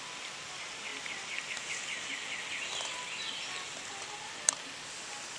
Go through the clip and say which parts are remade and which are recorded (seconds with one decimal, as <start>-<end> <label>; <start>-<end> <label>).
0.0-5.4 recorded